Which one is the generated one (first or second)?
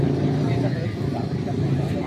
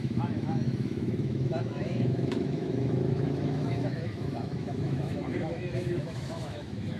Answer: second